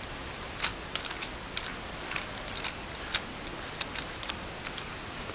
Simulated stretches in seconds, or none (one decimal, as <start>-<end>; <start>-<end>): 0.0-0.7; 3.9-5.3